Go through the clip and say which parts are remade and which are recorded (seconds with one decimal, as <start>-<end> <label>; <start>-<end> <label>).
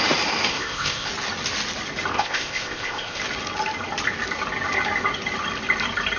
0.0-0.5 recorded; 0.5-1.1 remade; 1.1-2.1 recorded; 2.1-3.2 remade; 3.2-6.2 recorded